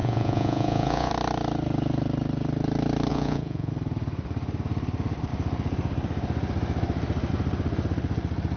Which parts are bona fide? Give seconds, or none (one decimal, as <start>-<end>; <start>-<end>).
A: 1.1-3.1; 3.7-8.6